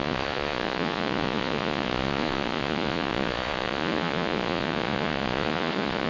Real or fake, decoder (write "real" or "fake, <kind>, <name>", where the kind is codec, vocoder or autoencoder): fake, vocoder, Vocos